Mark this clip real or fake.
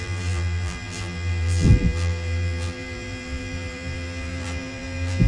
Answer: fake